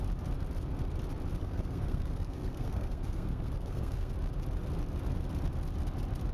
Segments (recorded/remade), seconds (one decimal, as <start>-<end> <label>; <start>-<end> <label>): 0.0-1.4 recorded; 1.4-4.1 remade; 4.1-6.3 recorded